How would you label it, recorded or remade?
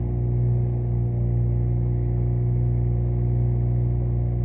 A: recorded